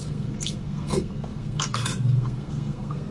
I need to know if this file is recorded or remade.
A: remade